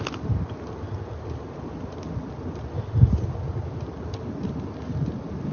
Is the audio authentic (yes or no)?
yes